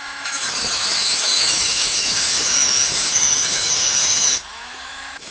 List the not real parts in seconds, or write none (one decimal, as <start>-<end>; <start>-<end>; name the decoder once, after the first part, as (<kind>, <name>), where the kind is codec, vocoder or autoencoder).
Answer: 0.0-5.3 (autoencoder, DAC-VAE)